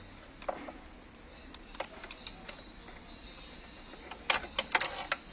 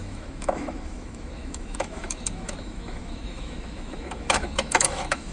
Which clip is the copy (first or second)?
second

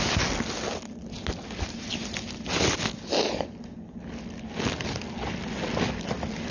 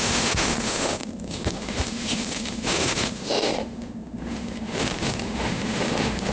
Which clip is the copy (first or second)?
second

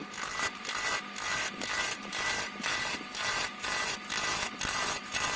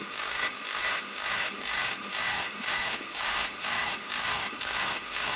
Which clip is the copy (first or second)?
second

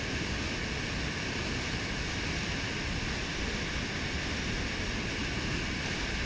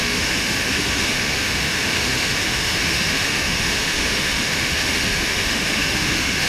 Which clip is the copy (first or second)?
second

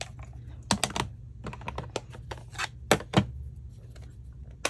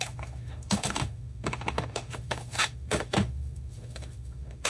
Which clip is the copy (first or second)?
second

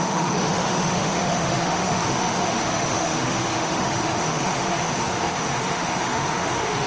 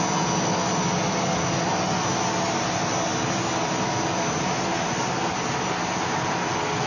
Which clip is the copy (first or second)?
first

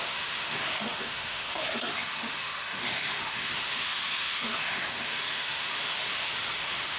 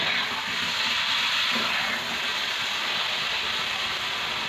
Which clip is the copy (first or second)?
first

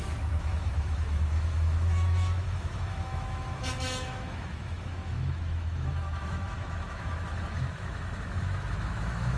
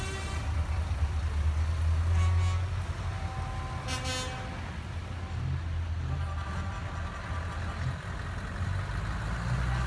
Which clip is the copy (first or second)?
first